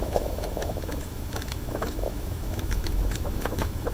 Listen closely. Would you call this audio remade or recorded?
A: remade